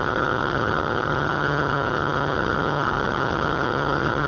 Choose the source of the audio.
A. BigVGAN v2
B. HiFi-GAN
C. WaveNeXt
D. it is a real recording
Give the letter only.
B